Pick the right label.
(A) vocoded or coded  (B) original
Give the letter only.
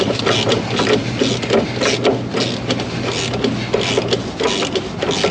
B